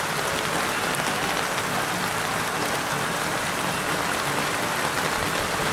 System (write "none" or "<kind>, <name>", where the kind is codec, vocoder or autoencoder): none